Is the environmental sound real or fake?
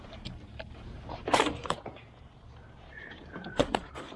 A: fake